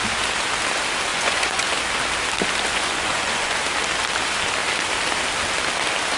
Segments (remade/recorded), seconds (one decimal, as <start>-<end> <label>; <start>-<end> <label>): 0.0-1.1 recorded; 1.1-1.8 remade; 1.8-2.7 recorded; 2.7-3.6 remade; 3.6-6.2 recorded